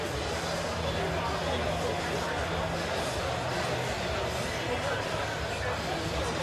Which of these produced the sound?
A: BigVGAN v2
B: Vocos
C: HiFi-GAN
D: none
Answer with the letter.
D